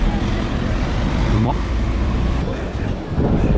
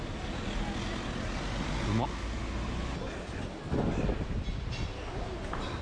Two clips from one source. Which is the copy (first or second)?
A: first